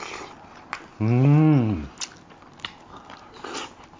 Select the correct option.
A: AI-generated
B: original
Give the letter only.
B